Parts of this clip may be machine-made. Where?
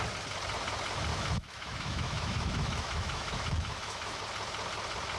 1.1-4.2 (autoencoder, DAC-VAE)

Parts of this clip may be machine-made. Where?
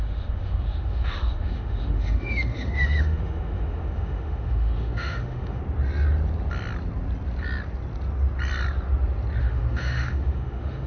0.0-5.6 (autoencoder, DAC-VAE); 9.4-10.9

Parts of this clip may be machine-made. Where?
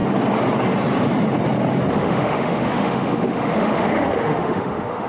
1.9-5.1 (autoencoder, DAC-VAE)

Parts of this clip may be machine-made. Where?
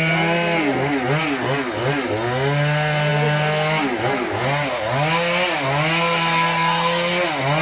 none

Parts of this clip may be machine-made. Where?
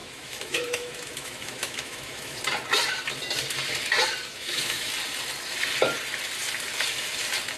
0.0-2.4 (autoencoder, DAC-VAE); 4.3-4.9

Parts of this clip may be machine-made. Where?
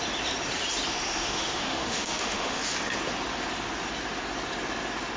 0.9-2.6 (autoencoder, DAC-VAE)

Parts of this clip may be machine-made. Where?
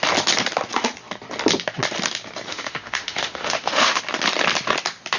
2.5-4.0 (autoencoder, DAC-VAE)